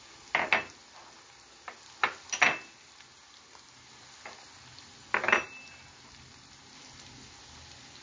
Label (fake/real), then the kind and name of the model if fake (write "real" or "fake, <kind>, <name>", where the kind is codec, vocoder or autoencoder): real